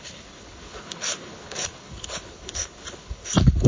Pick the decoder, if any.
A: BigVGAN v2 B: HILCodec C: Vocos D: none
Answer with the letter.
B